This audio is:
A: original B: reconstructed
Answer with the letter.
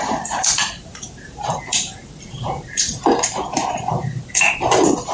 B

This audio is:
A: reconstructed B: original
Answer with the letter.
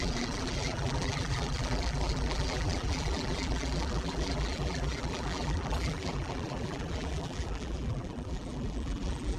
A